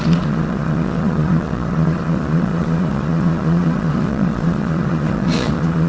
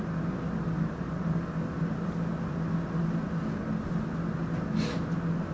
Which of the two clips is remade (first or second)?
first